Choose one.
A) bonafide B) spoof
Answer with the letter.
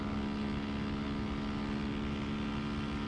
A